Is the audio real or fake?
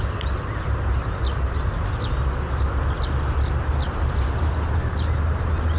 real